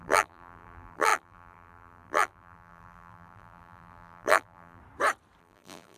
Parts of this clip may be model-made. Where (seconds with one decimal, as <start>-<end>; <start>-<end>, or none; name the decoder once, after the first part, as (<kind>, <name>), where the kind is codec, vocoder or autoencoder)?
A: 0.0-4.8 (vocoder, BigVGAN v2); 5.4-6.0